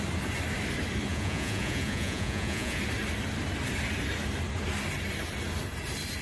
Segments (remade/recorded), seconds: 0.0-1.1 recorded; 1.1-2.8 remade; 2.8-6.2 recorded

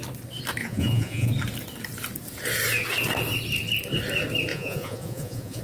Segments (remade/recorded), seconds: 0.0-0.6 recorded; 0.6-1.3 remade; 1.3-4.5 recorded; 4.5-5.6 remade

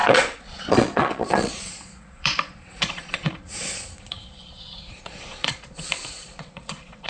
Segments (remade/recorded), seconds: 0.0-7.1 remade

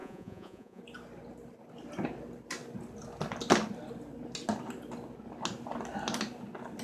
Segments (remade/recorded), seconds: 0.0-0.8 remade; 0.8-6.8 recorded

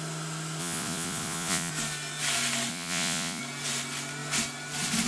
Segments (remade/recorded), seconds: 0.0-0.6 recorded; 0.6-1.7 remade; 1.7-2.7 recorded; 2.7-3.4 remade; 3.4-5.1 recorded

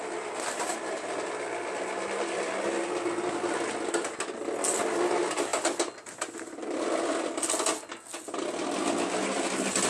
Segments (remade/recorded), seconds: 0.0-9.9 recorded

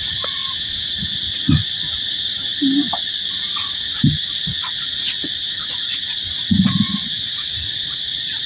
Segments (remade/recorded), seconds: 0.0-2.5 remade; 2.5-4.2 recorded; 4.2-8.5 remade

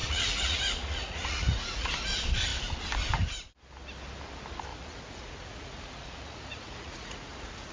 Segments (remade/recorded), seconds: 0.0-1.9 remade; 1.9-4.7 recorded; 4.7-7.7 remade